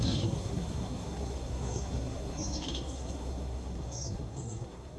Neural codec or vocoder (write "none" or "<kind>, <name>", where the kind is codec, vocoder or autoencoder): codec, SNAC